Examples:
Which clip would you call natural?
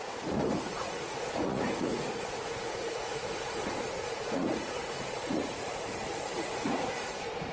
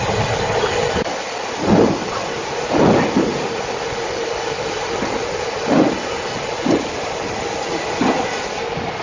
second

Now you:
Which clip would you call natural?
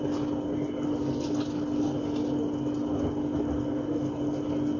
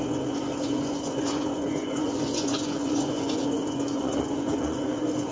first